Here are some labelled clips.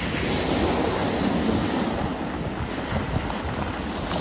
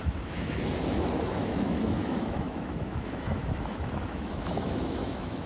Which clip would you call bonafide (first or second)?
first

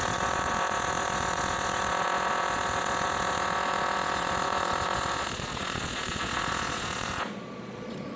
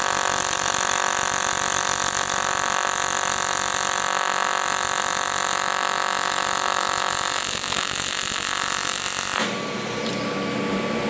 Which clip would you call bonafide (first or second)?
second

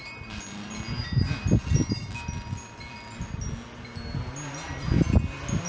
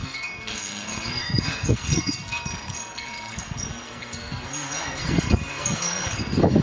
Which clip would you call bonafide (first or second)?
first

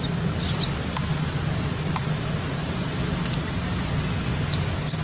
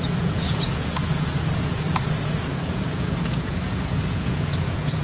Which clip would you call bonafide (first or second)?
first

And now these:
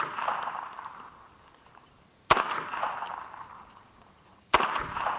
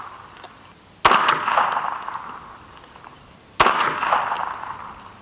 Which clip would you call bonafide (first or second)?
second